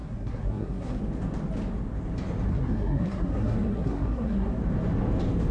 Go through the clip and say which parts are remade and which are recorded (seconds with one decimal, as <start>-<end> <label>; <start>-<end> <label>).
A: 0.0-1.0 remade; 1.0-2.5 recorded; 2.5-4.5 remade; 4.5-5.5 recorded